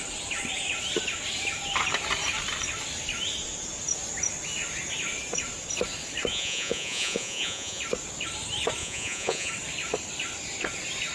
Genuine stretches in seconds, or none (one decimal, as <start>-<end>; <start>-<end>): 0.0-6.3; 7.8-8.8; 9.5-11.1